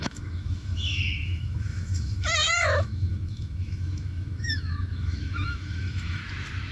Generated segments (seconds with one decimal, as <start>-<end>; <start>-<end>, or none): 0.0-6.2